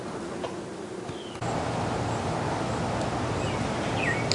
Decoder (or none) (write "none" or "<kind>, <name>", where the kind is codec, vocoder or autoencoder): none